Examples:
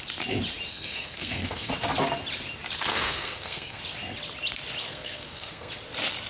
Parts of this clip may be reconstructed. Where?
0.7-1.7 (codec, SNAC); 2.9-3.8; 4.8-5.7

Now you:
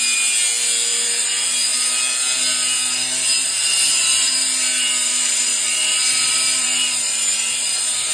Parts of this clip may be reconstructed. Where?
5.5-8.1 (vocoder, BigVGAN v2)

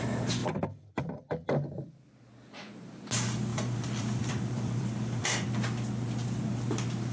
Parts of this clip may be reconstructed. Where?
0.4-1.9 (vocoder, BigVGAN v2); 3.5-5.5

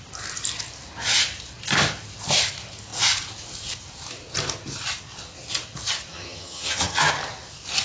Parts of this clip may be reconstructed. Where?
6.1-7.1 (vocoder, HiFi-GAN)

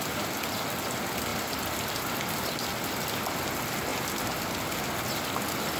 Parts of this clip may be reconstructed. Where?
none

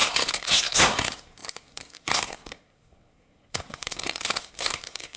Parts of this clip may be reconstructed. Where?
0.0-5.2 (codec, SNAC)

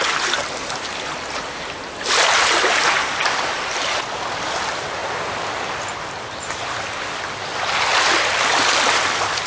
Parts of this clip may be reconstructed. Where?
none